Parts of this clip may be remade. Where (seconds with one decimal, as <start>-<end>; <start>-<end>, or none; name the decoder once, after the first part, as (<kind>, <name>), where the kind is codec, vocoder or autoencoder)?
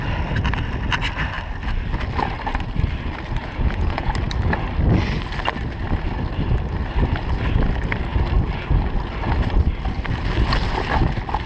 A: 3.4-4.1 (vocoder, Vocos)